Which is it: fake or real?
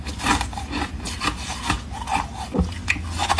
real